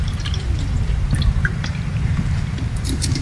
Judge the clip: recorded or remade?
remade